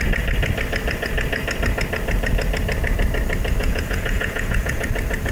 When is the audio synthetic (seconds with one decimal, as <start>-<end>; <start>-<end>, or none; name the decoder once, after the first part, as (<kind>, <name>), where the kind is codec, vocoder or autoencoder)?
3.6-4.8 (vocoder, Vocos)